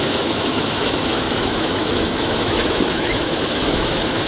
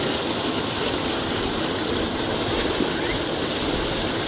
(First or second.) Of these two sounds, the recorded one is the second